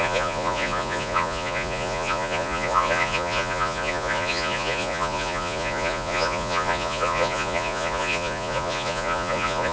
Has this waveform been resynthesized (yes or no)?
yes